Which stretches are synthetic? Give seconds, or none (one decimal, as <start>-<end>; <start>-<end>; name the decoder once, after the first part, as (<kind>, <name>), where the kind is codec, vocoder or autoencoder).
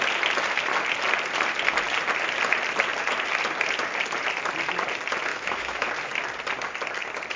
5.3-5.9 (autoencoder, DAC-VAE)